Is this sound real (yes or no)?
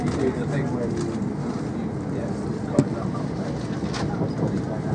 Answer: yes